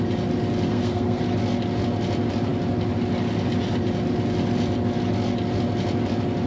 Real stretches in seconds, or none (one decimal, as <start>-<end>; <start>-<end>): 0.0-0.7; 1.2-6.5